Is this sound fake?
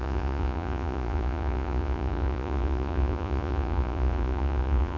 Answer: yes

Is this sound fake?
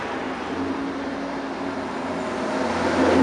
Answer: no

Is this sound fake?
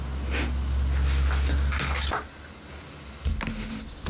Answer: no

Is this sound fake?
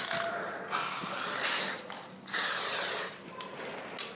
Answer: no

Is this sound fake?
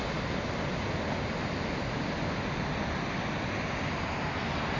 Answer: no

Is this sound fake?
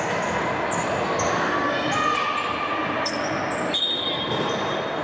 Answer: no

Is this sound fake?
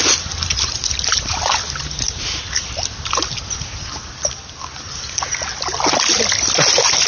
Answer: no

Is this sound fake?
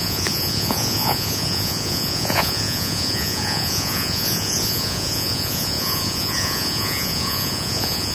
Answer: yes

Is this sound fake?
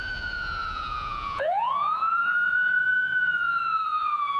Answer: yes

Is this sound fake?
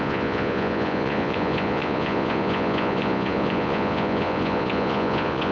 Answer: yes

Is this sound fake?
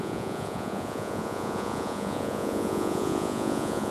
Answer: yes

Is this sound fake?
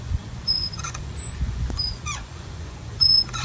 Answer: yes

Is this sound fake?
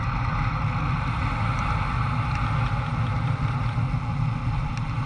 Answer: no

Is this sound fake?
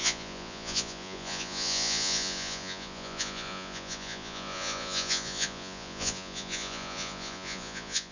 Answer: yes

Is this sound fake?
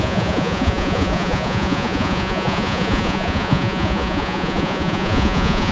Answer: yes